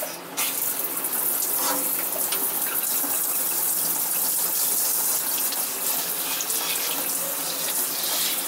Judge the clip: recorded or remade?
recorded